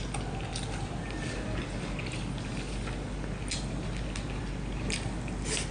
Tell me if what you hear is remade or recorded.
recorded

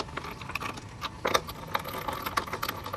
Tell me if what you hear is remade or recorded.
recorded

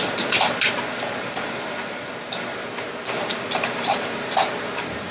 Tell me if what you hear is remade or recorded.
remade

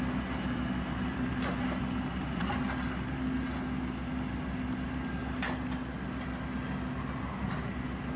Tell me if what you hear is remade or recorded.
recorded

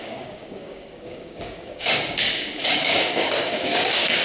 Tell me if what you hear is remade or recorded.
remade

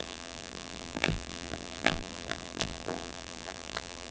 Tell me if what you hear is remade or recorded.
remade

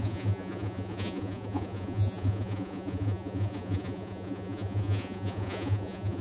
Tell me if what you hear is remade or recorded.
remade